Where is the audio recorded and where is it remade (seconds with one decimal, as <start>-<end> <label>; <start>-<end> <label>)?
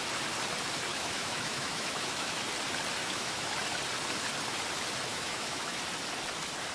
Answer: 0.0-0.9 recorded; 0.9-2.4 remade; 2.4-3.0 recorded; 3.0-3.5 remade; 3.5-5.1 recorded; 5.1-5.8 remade; 5.8-6.7 recorded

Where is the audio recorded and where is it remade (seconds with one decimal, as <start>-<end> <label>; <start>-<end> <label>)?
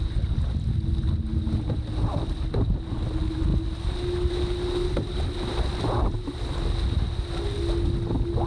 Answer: 0.0-8.5 recorded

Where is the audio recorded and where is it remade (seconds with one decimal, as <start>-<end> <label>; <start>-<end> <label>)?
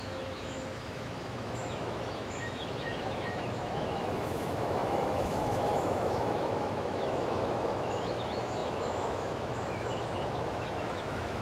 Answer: 0.0-11.4 remade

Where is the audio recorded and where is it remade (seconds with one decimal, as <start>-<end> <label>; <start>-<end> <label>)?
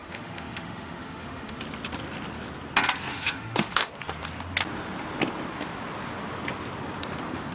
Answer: 0.0-1.6 remade; 1.6-3.1 recorded; 3.1-3.9 remade; 3.9-7.5 recorded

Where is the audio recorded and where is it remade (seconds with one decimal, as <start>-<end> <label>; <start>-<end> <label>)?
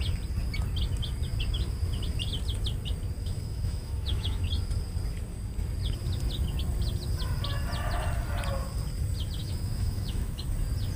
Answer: 0.0-3.2 recorded; 3.2-4.4 remade; 4.4-9.4 recorded; 9.4-10.4 remade; 10.4-11.0 recorded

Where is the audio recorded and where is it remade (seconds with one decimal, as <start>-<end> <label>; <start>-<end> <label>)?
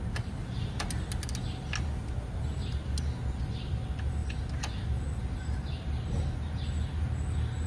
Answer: 0.0-7.7 recorded